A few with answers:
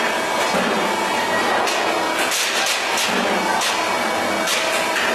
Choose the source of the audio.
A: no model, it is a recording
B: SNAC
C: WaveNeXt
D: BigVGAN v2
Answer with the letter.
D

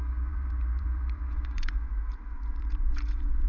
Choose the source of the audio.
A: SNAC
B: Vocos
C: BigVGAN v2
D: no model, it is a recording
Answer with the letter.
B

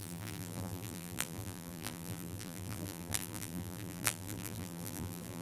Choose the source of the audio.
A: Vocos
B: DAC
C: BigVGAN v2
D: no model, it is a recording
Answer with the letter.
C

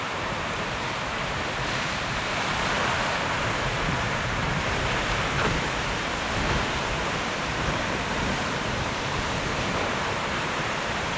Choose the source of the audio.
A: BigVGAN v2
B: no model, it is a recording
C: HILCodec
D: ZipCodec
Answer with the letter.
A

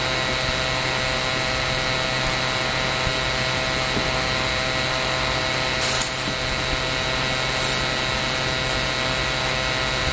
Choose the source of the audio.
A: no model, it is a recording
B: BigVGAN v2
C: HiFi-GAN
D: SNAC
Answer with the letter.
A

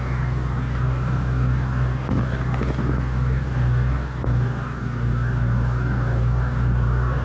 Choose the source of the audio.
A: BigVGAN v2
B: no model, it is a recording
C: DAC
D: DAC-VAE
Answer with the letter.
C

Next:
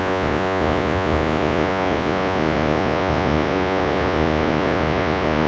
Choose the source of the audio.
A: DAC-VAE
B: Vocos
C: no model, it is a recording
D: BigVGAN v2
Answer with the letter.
B